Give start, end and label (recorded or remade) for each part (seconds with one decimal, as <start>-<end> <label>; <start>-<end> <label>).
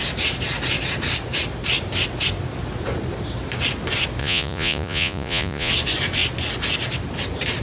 0.0-4.2 recorded; 4.2-5.7 remade; 5.7-7.6 recorded